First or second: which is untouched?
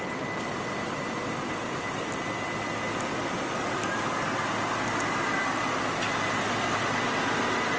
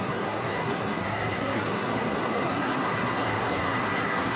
first